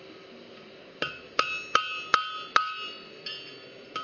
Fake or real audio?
real